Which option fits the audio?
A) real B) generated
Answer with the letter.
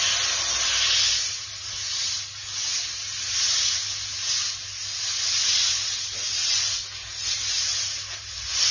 A